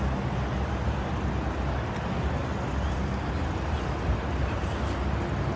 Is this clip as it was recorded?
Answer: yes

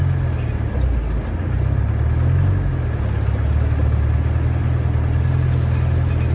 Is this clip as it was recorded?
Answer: yes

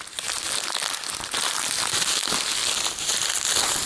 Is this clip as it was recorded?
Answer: yes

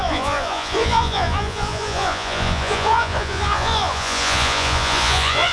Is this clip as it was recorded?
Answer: no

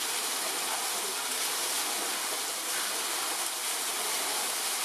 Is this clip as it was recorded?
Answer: yes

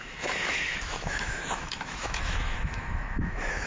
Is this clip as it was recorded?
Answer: no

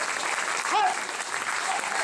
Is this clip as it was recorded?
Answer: yes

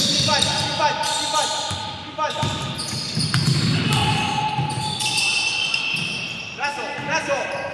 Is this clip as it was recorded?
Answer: yes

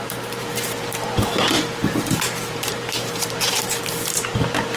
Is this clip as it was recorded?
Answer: no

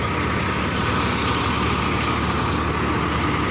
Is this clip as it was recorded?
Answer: yes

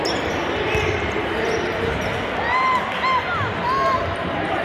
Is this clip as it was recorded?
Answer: yes